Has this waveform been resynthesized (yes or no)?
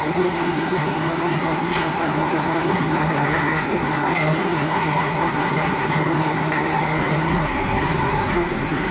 yes